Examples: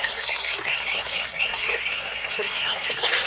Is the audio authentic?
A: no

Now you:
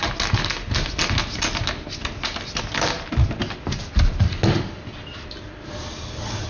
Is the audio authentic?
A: yes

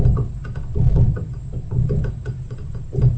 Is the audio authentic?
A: yes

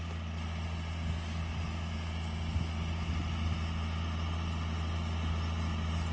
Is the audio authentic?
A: yes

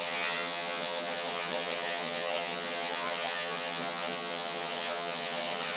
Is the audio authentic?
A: no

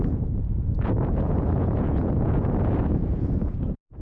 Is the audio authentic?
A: no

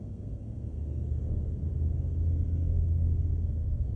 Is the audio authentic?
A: no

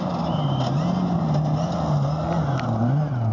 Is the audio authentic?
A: yes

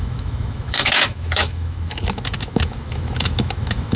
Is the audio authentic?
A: no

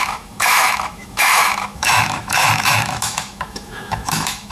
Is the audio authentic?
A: no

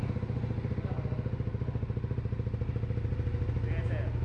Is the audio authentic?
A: yes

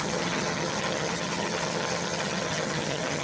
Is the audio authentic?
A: no